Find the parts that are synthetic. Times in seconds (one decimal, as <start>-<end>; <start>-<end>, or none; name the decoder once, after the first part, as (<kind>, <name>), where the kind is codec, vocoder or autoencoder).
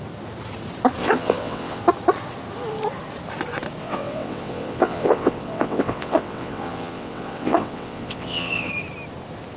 1.0-1.8 (vocoder, WaveNeXt); 3.8-8.7